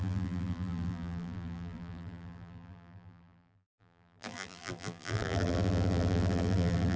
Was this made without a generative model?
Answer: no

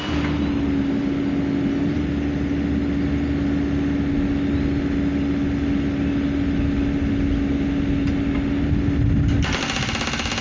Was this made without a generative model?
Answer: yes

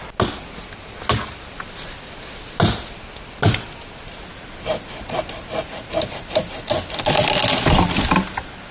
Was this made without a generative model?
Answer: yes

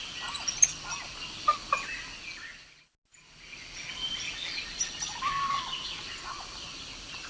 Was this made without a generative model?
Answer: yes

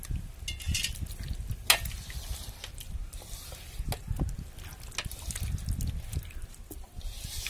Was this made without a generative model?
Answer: yes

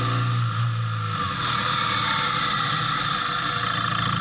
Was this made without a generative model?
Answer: yes